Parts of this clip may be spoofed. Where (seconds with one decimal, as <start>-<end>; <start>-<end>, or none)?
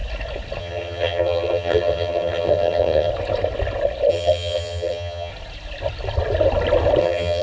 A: 0.6-3.1; 4.1-5.3; 7.0-7.4